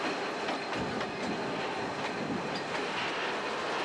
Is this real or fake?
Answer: real